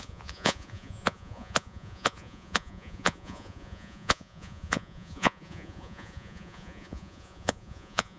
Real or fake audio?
fake